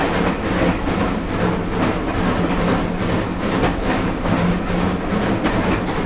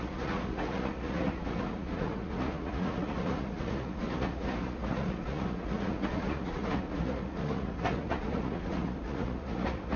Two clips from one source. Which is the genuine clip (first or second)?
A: first